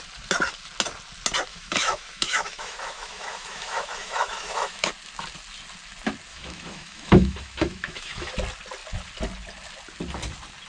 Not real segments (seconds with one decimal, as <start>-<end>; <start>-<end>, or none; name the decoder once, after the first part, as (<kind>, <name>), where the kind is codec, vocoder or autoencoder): 1.5-4.9 (autoencoder, DAC-VAE); 6.3-8.3